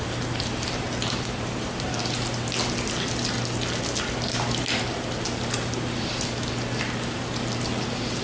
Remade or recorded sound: recorded